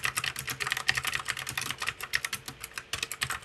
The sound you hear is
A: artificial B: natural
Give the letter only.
B